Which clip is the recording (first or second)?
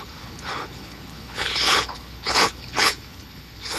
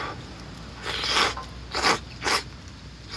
second